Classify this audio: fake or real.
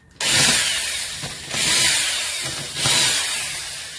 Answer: real